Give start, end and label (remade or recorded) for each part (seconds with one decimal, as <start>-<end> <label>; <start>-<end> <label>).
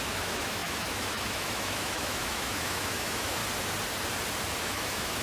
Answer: 0.0-3.4 remade; 3.4-4.6 recorded; 4.6-5.2 remade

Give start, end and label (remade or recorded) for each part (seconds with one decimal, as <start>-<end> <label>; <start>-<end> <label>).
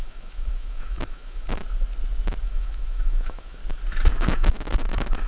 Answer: 0.0-1.6 remade; 1.6-2.4 recorded; 2.4-3.6 remade; 3.6-4.1 recorded; 4.1-5.3 remade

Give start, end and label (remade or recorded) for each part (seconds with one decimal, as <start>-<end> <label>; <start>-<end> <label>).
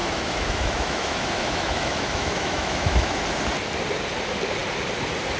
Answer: 0.0-3.2 remade; 3.2-5.4 recorded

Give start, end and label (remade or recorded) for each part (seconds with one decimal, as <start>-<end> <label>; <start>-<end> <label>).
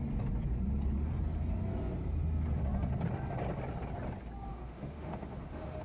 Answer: 0.0-4.5 recorded; 4.5-5.8 remade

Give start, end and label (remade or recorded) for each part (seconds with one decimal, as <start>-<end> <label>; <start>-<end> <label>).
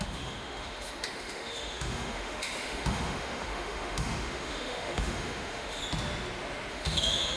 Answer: 0.0-5.8 remade; 5.8-6.7 recorded; 6.7-7.4 remade